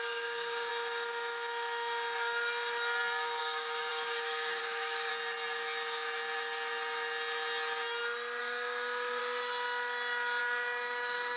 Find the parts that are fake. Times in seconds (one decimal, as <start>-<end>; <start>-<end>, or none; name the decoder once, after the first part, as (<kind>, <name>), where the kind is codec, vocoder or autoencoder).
0.0-0.7 (codec, DAC); 3.4-5.1; 8.4-9.2; 10.4-11.4